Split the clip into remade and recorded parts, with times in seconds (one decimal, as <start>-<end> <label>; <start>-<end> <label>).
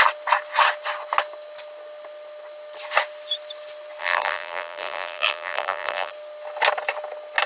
0.0-4.0 recorded; 4.0-6.1 remade; 6.1-7.5 recorded